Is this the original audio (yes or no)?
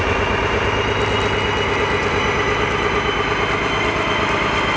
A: yes